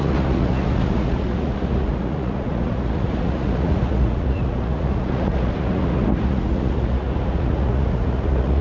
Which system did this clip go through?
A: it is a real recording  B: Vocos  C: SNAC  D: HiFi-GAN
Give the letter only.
B